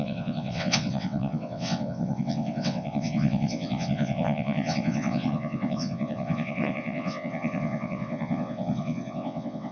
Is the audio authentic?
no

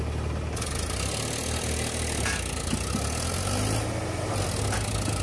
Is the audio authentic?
yes